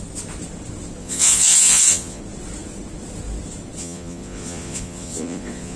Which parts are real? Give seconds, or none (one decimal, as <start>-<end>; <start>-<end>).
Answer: 0.0-1.0; 2.2-3.8